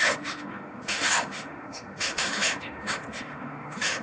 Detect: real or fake fake